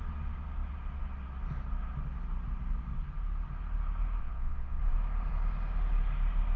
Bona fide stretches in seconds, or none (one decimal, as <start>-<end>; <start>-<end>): 0.0-4.2; 4.8-6.6